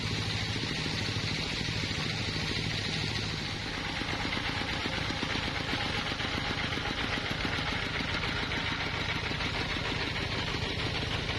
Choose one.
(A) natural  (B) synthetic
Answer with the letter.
A